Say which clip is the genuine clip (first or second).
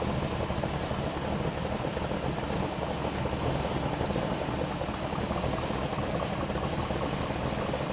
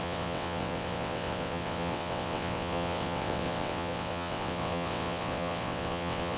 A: first